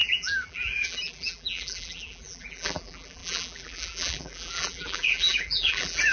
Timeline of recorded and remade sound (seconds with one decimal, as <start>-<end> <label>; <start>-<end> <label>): 0.0-6.1 remade